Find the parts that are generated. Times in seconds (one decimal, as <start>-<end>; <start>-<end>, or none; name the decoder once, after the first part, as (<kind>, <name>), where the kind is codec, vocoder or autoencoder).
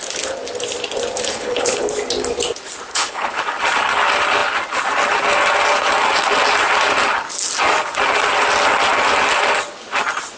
1.3-1.9 (codec, HILCodec); 2.9-3.4